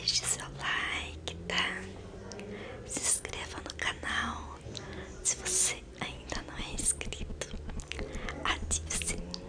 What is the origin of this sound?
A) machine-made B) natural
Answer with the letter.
B